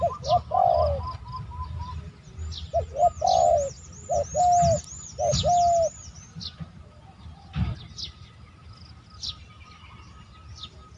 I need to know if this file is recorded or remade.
recorded